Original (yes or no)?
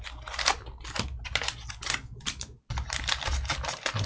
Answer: yes